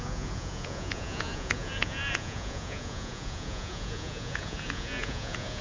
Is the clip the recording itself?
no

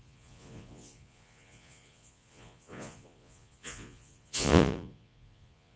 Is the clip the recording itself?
no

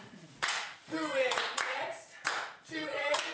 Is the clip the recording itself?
no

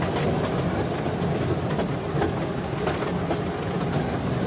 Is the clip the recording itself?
yes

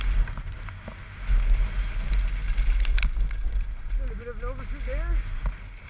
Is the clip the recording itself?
yes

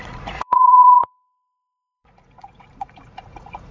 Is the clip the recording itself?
no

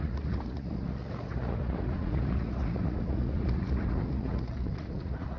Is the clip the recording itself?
no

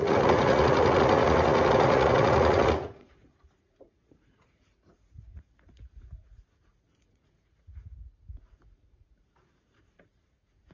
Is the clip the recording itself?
no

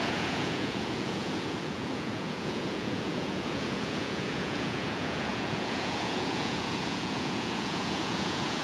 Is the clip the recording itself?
no